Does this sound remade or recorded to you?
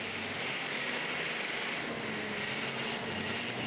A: recorded